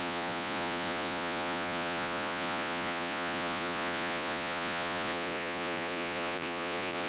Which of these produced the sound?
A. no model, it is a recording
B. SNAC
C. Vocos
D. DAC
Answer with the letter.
C